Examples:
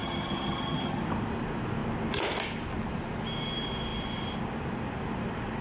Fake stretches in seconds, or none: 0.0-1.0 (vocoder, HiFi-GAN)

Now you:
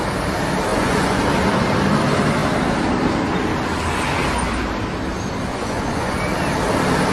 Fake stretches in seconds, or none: 0.7-1.2 (vocoder, Vocos); 5.5-6.2

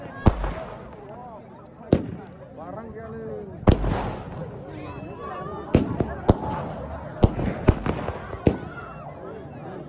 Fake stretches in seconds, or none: none

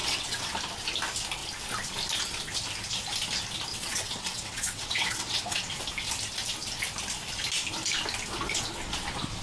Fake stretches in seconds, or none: 0.0-0.5 (vocoder, WaveNeXt); 3.7-5.8

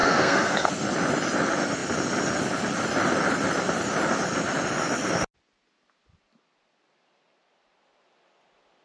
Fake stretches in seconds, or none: 0.0-0.7 (codec, SNAC)

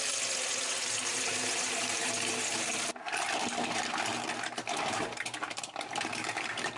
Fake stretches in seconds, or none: 1.1-2.7 (vocoder, BigVGAN v2); 4.1-6.8

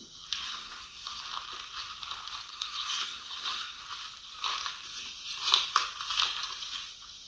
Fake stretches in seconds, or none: 0.4-1.2 (codec, SNAC); 2.5-3.8

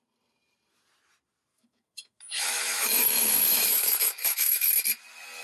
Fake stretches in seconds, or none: 1.5-4.7 (autoencoder, DAC-VAE)